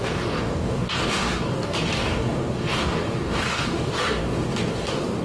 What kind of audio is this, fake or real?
fake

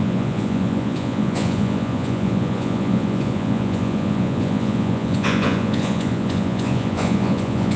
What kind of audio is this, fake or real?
fake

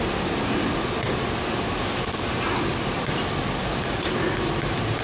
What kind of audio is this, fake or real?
real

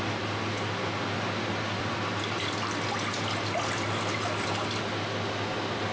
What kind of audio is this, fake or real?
real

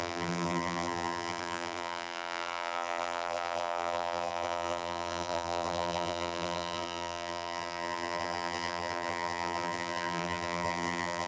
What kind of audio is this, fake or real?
fake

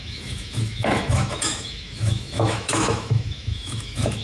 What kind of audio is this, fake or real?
fake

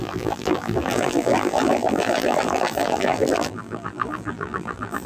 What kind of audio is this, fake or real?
fake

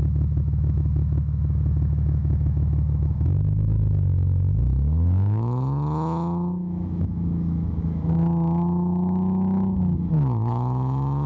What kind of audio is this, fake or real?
fake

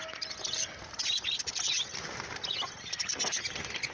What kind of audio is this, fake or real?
real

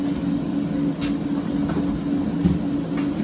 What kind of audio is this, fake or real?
real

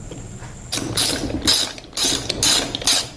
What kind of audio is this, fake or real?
real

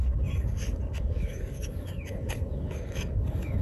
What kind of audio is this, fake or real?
fake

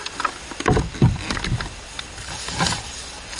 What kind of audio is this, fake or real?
fake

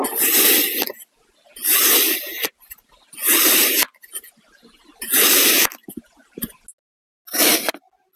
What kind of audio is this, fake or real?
real